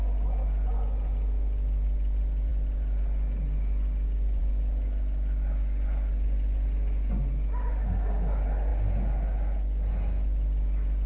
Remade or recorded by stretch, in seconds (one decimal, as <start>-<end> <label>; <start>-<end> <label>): 0.0-11.1 recorded